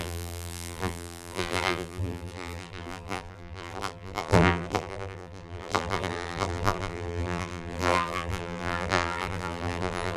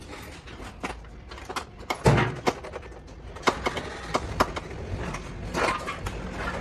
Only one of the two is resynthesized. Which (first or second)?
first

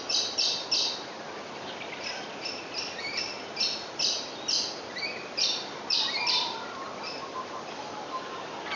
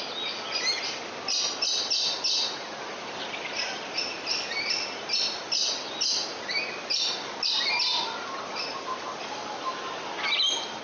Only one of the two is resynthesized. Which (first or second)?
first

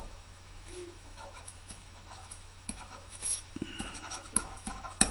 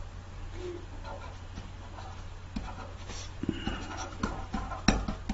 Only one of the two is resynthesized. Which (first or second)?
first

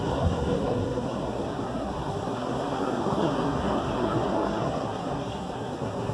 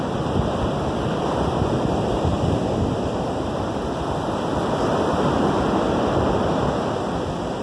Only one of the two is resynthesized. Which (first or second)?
first